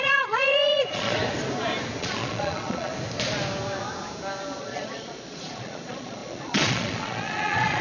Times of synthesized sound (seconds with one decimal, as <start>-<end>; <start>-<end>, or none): 0.0-1.2; 2.0-2.9; 4.6-7.8